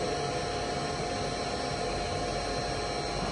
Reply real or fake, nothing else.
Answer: real